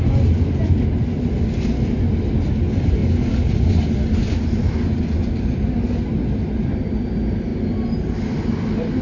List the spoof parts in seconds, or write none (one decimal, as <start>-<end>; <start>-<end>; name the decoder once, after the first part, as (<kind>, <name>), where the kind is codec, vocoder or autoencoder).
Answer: none